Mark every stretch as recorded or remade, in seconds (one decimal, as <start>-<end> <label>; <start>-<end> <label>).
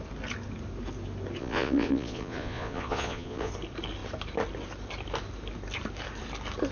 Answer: 0.0-1.4 recorded; 1.4-3.5 remade; 3.5-6.7 recorded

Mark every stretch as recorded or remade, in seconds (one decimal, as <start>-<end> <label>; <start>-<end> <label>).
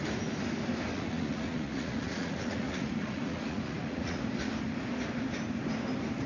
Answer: 0.0-0.9 recorded; 0.9-4.2 remade; 4.2-6.3 recorded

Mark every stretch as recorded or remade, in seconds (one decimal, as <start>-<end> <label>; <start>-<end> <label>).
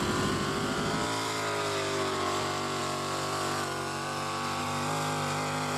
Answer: 0.0-5.8 recorded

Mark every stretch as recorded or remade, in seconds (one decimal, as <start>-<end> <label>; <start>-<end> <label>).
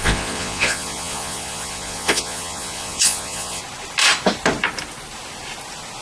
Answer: 0.0-3.6 remade; 3.6-6.0 recorded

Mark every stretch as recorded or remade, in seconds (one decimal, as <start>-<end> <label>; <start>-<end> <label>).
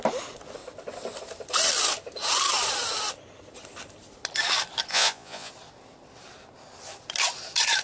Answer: 0.0-4.9 recorded; 4.9-5.5 remade; 5.5-7.8 recorded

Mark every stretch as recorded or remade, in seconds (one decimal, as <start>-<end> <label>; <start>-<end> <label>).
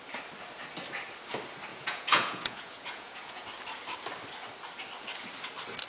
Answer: 0.0-1.7 recorded; 1.7-3.5 remade; 3.5-5.9 recorded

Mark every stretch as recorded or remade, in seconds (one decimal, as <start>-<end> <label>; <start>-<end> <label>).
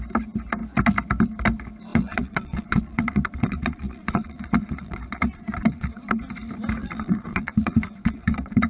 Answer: 0.0-1.9 recorded; 1.9-6.1 remade; 6.1-6.8 recorded; 6.8-8.7 remade